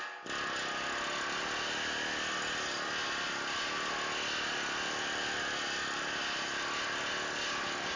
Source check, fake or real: real